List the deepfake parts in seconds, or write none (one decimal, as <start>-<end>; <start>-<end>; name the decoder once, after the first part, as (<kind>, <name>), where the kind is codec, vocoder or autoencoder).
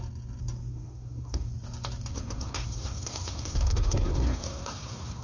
0.7-1.5 (codec, SNAC); 2.1-5.2